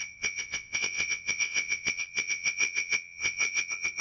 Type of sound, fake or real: fake